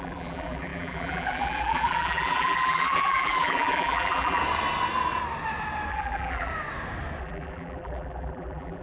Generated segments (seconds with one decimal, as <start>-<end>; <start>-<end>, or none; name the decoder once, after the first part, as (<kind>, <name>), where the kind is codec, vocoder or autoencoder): 0.0-4.4 (vocoder, BigVGAN v2); 5.9-6.5; 7.2-8.8